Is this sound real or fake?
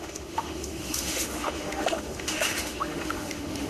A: fake